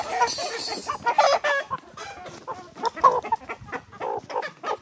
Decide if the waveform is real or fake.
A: real